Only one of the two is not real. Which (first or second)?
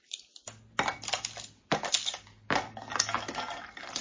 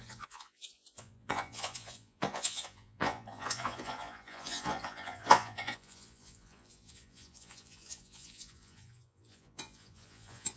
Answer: second